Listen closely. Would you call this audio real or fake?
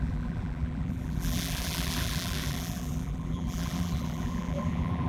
fake